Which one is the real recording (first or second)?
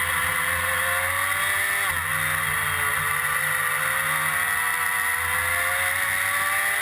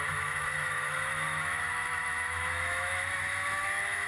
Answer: first